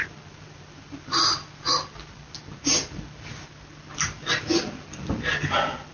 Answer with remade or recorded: recorded